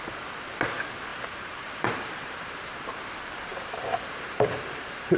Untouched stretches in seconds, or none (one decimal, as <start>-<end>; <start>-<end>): 0.0-1.1; 2.7-3.5